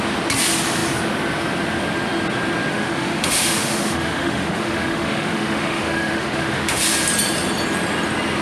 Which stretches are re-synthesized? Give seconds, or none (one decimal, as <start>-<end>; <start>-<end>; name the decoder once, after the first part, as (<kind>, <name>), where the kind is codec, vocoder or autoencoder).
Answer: 2.7-6.8 (autoencoder, DAC-VAE)